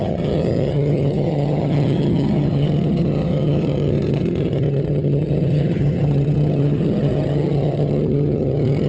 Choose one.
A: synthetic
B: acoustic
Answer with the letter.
A